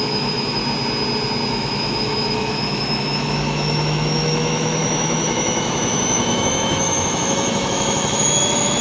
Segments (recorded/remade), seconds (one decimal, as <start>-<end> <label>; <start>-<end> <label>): 0.0-0.6 remade; 0.6-1.5 recorded; 1.5-8.8 remade